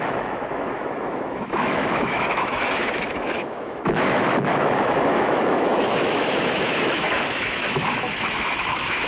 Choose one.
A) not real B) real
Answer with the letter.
A